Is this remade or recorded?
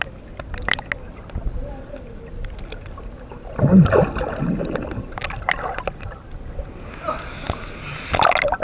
recorded